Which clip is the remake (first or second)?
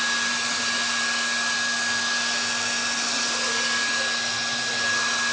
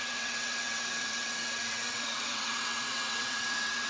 second